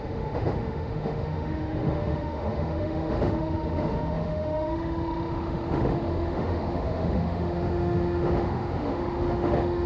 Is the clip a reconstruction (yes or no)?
yes